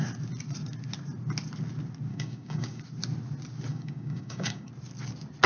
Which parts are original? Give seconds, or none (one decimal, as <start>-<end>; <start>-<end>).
0.0-2.1; 2.8-3.7; 4.7-5.5